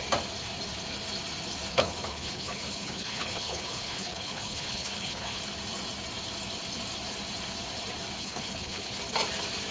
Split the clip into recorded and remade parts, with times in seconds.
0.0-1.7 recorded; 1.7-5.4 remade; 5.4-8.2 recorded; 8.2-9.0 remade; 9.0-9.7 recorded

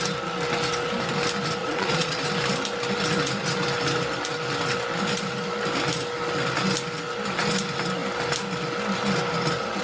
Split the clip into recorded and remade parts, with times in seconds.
0.0-1.6 recorded; 1.6-2.2 remade; 2.2-9.8 recorded

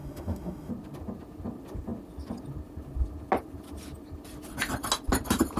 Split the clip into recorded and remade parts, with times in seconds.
0.0-0.7 remade; 0.7-5.6 recorded

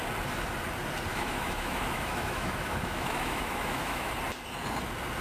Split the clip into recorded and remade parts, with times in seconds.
0.0-1.1 recorded; 1.1-4.1 remade; 4.1-5.2 recorded

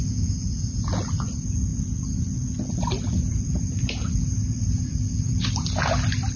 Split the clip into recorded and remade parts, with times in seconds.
0.0-1.7 recorded; 1.7-5.5 remade; 5.5-6.4 recorded

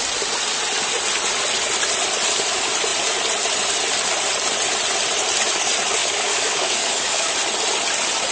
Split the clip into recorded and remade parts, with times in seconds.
0.0-6.0 recorded; 6.0-7.3 remade; 7.3-8.3 recorded